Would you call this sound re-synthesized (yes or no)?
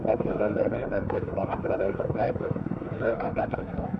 yes